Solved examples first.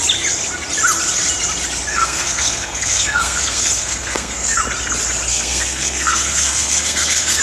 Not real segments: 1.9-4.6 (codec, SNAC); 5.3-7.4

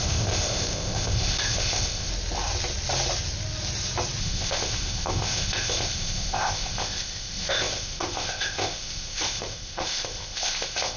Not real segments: 0.0-2.1 (codec, ZipCodec); 4.2-11.0

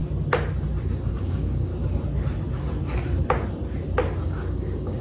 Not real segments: 1.1-1.7 (codec, DAC); 4.2-5.0

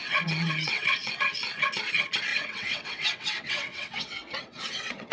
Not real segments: 0.0-1.1 (vocoder, WaveNeXt); 2.3-5.1

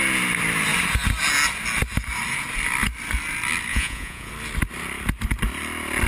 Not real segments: 3.7-4.3 (vocoder, Vocos)

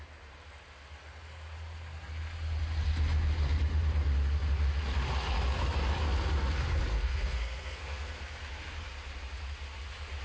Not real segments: 6.9-8.2 (codec, SNAC)

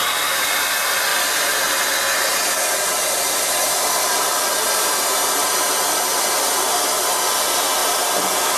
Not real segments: none